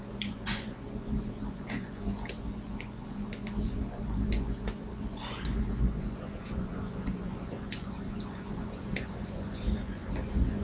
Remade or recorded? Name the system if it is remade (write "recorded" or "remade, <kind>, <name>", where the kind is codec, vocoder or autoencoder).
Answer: remade, vocoder, Vocos